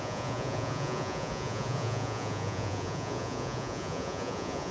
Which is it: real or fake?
fake